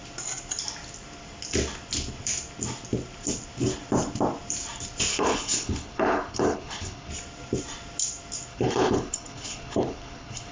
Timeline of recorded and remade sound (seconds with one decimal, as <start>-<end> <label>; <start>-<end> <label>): 0.0-5.1 recorded; 5.1-7.1 remade; 7.1-8.5 recorded; 8.5-10.5 remade